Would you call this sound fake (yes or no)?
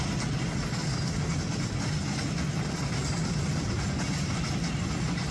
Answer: no